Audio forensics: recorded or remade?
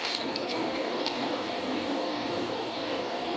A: remade